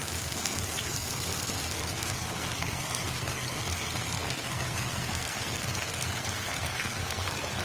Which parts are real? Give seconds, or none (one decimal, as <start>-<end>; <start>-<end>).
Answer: none